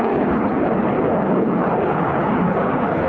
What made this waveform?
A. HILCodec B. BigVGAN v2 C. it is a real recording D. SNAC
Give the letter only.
A